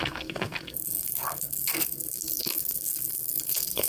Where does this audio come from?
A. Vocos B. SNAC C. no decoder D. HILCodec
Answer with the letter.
B